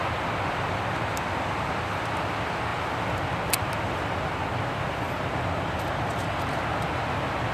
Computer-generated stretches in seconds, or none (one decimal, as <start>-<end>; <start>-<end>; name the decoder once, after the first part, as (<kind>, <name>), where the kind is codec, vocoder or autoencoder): none